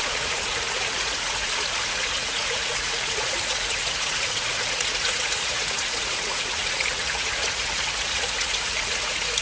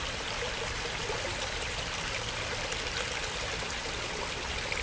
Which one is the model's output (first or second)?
first